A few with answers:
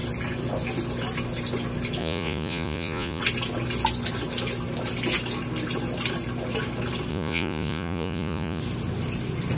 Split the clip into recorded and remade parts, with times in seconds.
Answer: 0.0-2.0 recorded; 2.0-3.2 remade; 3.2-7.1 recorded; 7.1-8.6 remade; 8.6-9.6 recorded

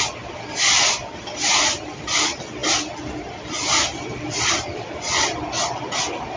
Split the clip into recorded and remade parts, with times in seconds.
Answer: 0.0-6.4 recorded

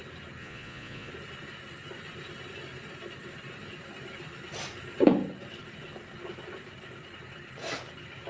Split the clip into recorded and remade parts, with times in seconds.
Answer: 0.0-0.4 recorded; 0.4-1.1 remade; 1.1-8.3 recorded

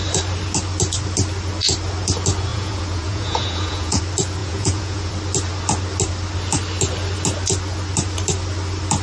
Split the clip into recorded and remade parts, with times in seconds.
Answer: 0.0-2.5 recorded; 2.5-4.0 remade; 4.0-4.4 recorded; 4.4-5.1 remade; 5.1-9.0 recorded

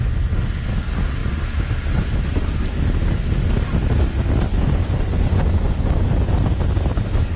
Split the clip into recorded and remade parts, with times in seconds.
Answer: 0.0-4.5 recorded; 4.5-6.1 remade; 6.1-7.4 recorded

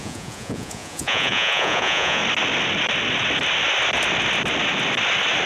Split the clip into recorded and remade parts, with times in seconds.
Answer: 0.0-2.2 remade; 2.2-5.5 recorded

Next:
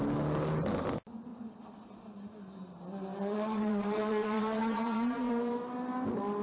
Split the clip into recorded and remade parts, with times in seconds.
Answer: 0.0-3.2 recorded; 3.2-5.3 remade; 5.3-6.4 recorded